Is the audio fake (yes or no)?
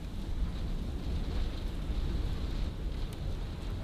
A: no